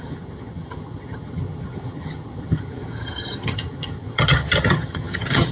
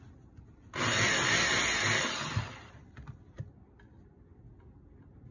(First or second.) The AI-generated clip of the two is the first